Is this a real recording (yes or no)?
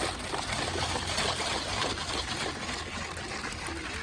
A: yes